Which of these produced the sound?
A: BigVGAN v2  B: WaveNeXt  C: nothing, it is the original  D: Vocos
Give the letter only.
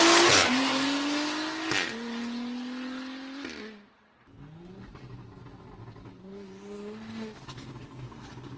C